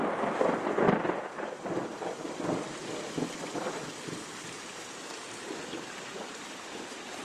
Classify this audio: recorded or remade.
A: remade